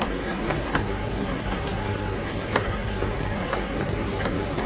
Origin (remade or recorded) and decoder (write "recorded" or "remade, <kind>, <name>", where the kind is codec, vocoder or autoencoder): remade, codec, SNAC